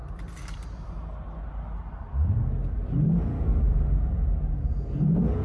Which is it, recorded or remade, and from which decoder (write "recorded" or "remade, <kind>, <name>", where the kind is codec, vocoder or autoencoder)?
recorded